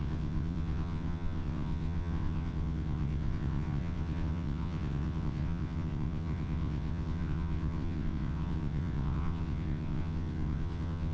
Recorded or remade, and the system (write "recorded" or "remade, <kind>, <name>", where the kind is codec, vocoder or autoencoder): remade, vocoder, WaveNeXt